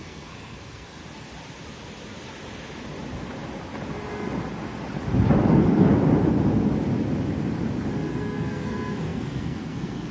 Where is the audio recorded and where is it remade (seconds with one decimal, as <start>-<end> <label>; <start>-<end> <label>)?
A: 0.0-1.0 remade; 1.0-5.4 recorded; 5.4-5.9 remade; 5.9-8.1 recorded; 8.1-10.1 remade